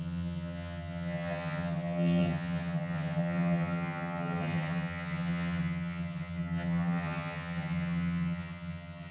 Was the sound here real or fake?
fake